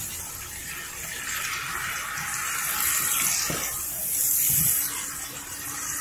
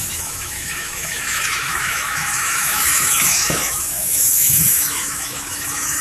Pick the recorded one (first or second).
first